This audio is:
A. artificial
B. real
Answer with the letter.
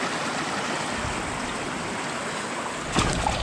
B